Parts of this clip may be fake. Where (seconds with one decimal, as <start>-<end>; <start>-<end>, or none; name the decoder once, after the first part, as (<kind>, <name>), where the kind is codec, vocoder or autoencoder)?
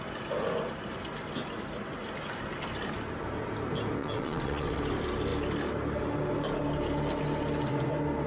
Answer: 4.0-4.8 (vocoder, WaveNeXt)